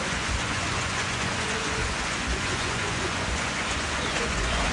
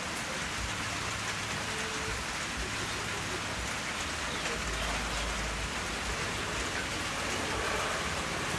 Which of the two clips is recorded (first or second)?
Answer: second